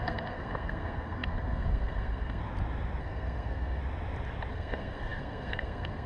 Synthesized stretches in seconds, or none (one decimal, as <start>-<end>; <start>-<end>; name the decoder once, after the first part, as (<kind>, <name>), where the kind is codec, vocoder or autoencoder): 0.0-2.4 (codec, SNAC); 3.0-3.8; 4.5-6.1